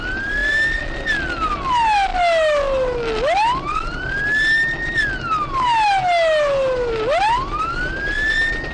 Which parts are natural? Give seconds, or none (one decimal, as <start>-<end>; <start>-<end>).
0.0-8.7